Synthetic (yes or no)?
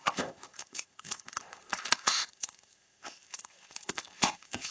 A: yes